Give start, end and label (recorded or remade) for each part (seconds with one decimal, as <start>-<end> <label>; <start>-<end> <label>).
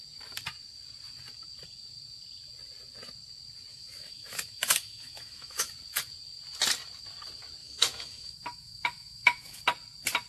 0.0-3.7 recorded; 3.7-5.7 remade; 5.7-7.6 recorded; 7.6-9.6 remade; 9.6-10.3 recorded